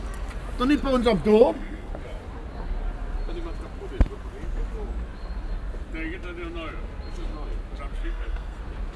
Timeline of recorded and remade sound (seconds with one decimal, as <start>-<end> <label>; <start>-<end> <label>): 0.0-1.3 recorded; 1.3-1.9 remade; 1.9-8.0 recorded; 8.0-8.6 remade; 8.6-9.0 recorded